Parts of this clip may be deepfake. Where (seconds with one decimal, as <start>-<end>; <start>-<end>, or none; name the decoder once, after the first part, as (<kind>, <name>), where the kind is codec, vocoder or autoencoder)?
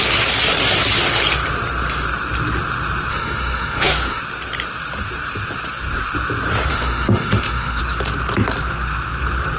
3.1-4.2 (autoencoder, DAC-VAE); 6.7-7.8